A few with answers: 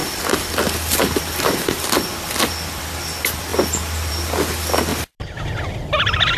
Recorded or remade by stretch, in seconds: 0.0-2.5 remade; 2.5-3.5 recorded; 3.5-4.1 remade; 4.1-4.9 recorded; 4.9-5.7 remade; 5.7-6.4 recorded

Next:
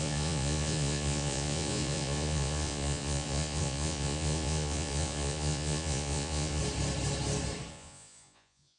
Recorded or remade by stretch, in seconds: 0.0-6.6 remade; 6.6-7.7 recorded; 7.7-8.8 remade

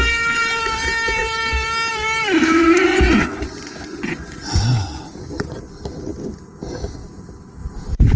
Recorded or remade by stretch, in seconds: 0.0-2.9 recorded; 2.9-5.6 remade; 5.6-8.2 recorded

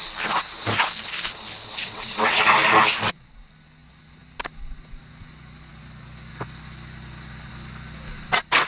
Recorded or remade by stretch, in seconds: 0.0-1.8 recorded; 1.8-2.4 remade; 2.4-8.7 recorded

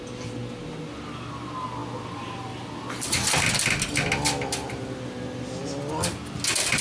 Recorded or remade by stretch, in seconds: 0.0-6.8 recorded

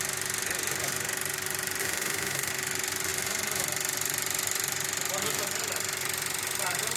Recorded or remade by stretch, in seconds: 0.0-1.8 recorded; 1.8-2.5 remade; 2.5-7.0 recorded